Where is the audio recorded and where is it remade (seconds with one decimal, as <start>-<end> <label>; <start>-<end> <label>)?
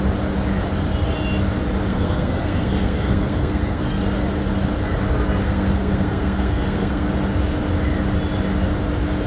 0.0-1.9 recorded; 1.9-4.0 remade; 4.0-5.4 recorded; 5.4-7.1 remade; 7.1-9.3 recorded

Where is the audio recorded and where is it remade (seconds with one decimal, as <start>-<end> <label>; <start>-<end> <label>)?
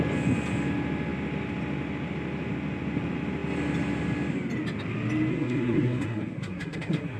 0.0-5.3 recorded; 5.3-7.2 remade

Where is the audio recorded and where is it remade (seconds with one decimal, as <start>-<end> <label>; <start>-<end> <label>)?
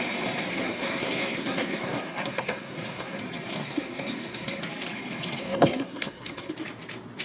0.0-0.5 recorded; 0.5-3.2 remade; 3.2-3.6 recorded; 3.6-4.6 remade; 4.6-5.4 recorded; 5.4-6.5 remade; 6.5-7.2 recorded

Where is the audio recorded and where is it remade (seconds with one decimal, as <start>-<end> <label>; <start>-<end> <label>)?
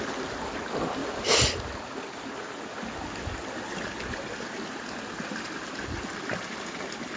0.0-7.2 recorded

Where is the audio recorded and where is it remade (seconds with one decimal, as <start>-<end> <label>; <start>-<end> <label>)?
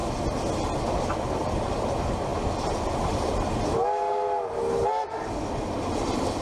0.0-6.4 recorded